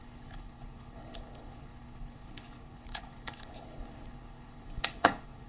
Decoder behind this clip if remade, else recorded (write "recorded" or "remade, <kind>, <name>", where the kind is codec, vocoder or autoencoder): remade, codec, HILCodec